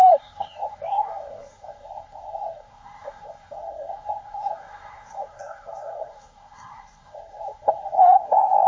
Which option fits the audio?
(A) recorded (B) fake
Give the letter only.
B